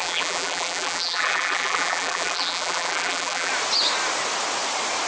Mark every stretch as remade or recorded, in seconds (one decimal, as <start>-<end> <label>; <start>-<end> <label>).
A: 0.0-3.5 remade; 3.5-5.1 recorded